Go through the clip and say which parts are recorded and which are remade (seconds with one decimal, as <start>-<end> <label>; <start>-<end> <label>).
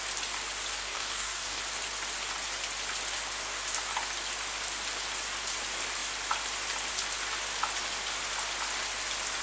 0.0-0.7 recorded; 0.7-1.6 remade; 1.6-9.4 recorded